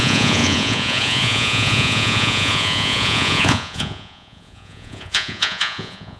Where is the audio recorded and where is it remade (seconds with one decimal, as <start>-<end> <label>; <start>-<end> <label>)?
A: 0.0-6.2 remade